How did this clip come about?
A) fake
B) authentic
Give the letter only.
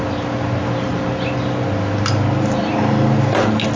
B